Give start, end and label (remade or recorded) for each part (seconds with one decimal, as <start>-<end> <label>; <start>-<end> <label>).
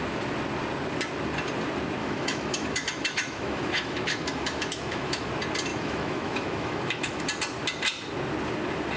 0.0-2.0 recorded; 2.0-5.3 remade; 5.3-5.7 recorded; 5.7-7.2 remade; 7.2-9.0 recorded